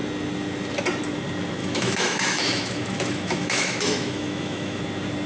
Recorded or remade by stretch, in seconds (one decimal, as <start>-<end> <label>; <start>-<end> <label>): 0.0-1.6 recorded; 1.6-4.8 remade; 4.8-5.3 recorded